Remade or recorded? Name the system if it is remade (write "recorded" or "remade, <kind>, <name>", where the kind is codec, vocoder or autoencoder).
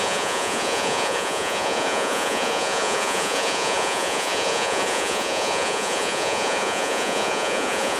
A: remade, vocoder, Vocos